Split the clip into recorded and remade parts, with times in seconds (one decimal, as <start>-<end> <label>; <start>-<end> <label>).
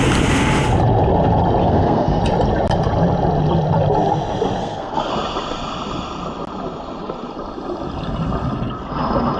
0.0-1.6 recorded; 1.6-2.2 remade; 2.2-4.6 recorded; 4.6-5.1 remade; 5.1-9.4 recorded